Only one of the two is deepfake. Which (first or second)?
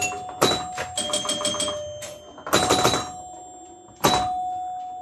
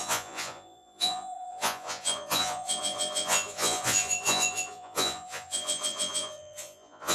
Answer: second